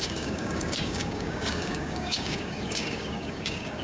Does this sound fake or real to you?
fake